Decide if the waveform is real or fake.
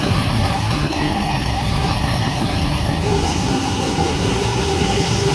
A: fake